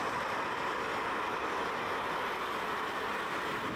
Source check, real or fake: real